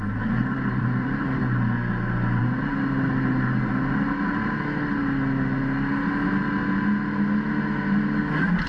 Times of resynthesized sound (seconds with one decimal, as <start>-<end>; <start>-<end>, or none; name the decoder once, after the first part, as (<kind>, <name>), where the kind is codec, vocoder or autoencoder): 0.0-1.4 (vocoder, BigVGAN v2); 2.4-3.7